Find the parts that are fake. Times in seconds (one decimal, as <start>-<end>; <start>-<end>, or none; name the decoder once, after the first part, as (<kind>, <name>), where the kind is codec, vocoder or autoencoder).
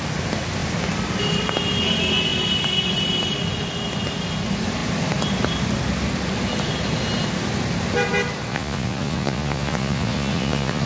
8.5-10.9 (vocoder, Vocos)